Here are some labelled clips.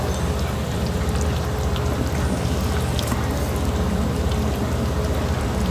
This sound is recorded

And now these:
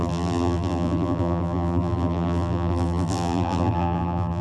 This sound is remade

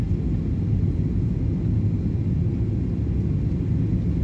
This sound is recorded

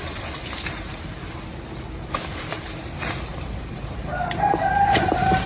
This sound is remade